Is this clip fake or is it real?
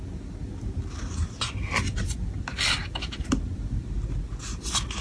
real